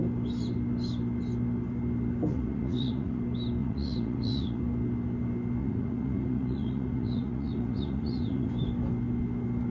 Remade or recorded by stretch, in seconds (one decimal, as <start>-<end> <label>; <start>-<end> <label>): 0.0-2.3 recorded; 2.3-3.2 remade; 3.2-3.6 recorded; 3.6-4.6 remade; 4.6-5.6 recorded; 5.6-8.5 remade; 8.5-9.7 recorded